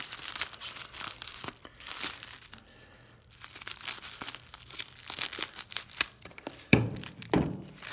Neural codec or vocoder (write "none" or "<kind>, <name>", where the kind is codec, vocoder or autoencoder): vocoder, BigVGAN v2